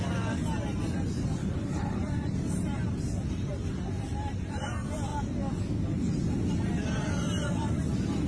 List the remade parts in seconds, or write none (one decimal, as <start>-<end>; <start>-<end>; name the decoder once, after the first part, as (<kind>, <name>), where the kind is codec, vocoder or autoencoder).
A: 1.4-2.0 (codec, HILCodec)